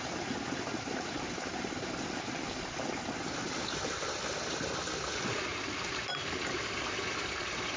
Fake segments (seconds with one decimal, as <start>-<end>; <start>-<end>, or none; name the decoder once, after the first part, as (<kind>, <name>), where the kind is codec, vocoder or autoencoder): none